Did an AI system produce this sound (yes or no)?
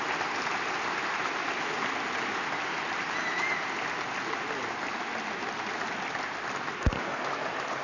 no